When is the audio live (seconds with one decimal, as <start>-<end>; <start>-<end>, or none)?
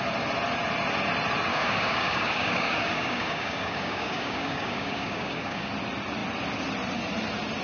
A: 0.0-1.5; 5.7-7.6